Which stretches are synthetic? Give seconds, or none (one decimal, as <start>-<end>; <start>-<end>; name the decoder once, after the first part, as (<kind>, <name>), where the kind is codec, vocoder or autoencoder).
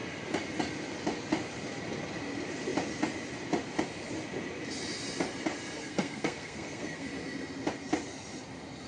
5.8-7.1 (codec, SNAC)